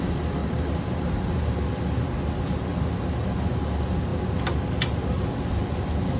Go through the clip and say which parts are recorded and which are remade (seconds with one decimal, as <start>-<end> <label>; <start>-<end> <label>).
0.0-0.4 recorded; 0.4-1.6 remade; 1.6-2.7 recorded; 2.7-3.4 remade; 3.4-6.2 recorded